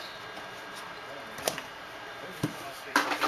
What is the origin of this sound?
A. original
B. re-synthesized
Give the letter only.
B